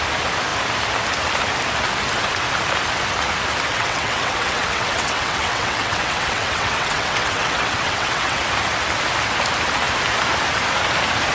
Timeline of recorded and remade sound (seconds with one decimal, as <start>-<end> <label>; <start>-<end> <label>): 0.0-3.7 recorded; 3.7-8.4 remade; 8.4-11.3 recorded

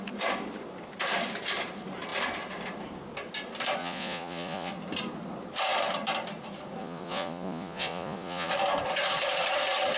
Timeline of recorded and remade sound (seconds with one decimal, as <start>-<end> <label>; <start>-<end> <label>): 0.0-3.8 recorded; 3.8-4.7 remade; 4.7-6.8 recorded; 6.8-8.5 remade; 8.5-10.0 recorded

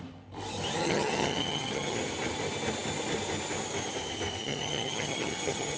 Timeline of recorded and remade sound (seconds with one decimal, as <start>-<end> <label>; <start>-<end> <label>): 0.0-0.8 recorded; 0.8-2.0 remade; 2.0-4.4 recorded; 4.4-5.8 remade